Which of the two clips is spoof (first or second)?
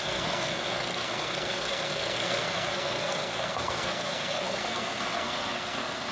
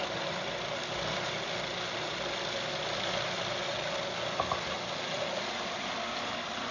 first